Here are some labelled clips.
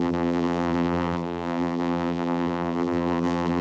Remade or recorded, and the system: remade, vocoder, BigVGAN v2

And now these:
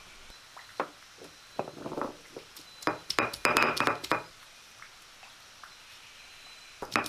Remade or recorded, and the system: recorded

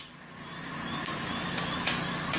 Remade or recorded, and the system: recorded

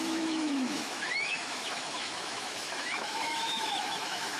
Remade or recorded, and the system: remade, autoencoder, DAC-VAE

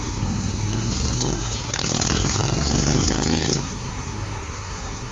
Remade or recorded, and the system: remade, codec, SNAC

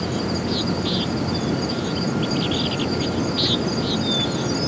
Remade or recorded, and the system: recorded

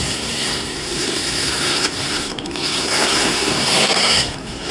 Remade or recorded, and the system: remade, codec, SNAC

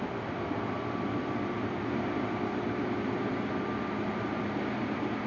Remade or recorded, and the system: recorded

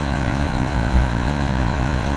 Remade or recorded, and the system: remade, vocoder, Vocos